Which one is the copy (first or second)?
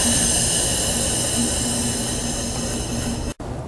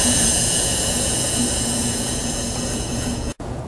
second